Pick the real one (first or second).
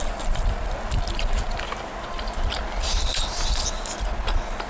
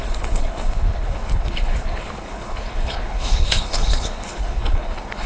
first